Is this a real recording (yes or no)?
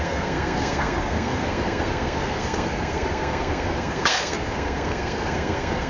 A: no